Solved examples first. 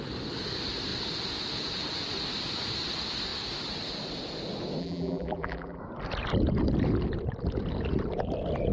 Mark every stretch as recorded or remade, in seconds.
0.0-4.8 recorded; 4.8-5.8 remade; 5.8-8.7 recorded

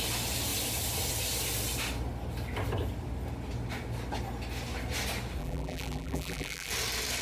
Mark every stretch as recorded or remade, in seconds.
0.0-5.4 recorded; 5.4-6.7 remade; 6.7-7.2 recorded

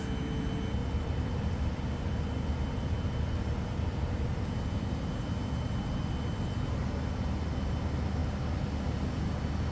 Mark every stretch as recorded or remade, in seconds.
0.0-0.8 recorded; 0.8-1.8 remade; 1.8-3.3 recorded; 3.3-6.0 remade; 6.0-8.2 recorded; 8.2-8.8 remade; 8.8-9.7 recorded

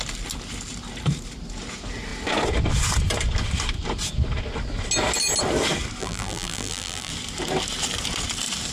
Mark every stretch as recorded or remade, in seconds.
0.0-6.0 recorded; 6.0-7.1 remade; 7.1-8.7 recorded